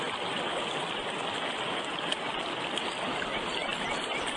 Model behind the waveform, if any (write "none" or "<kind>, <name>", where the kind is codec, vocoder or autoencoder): none